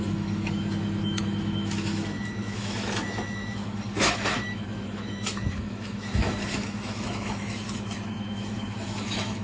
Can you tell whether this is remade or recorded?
remade